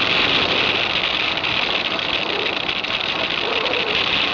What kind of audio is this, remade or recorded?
recorded